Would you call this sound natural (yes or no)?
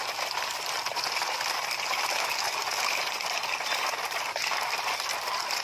yes